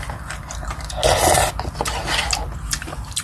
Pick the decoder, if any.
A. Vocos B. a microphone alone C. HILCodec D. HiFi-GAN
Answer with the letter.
B